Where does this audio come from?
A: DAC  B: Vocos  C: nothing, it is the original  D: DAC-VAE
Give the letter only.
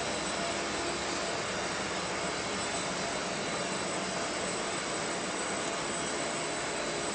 C